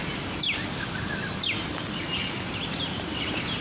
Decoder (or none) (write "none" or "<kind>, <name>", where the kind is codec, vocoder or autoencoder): none